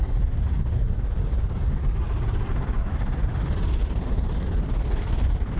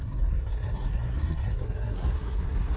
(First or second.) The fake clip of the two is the second